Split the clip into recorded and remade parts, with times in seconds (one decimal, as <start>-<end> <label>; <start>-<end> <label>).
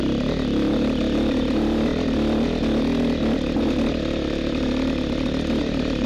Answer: 0.0-1.9 remade; 1.9-5.6 recorded; 5.6-6.1 remade